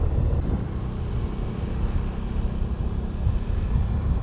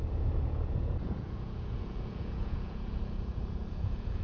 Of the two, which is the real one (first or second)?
first